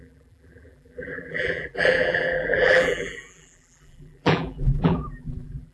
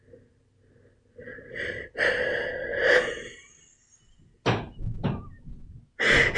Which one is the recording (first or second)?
second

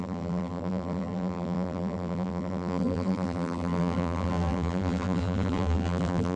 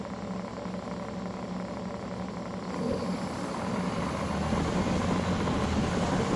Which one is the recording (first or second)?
second